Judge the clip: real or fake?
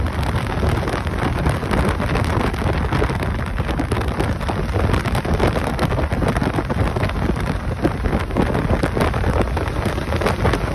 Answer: real